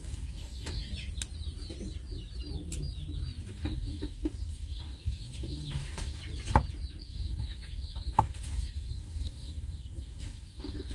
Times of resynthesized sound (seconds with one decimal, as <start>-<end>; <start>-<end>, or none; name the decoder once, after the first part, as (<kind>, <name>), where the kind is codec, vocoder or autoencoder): 0.0-0.9 (codec, DAC); 3.5-6.2; 7.0-10.9